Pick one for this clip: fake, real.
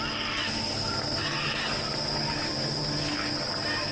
real